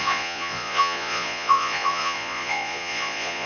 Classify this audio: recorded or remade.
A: remade